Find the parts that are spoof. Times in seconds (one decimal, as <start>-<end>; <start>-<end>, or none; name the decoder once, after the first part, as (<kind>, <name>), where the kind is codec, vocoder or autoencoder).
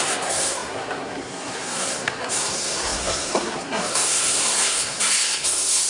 0.0-5.9 (codec, SNAC)